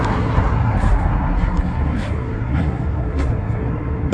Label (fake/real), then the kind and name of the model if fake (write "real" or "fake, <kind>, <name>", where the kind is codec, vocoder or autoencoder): fake, codec, SNAC